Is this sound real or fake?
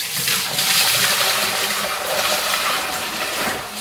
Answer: fake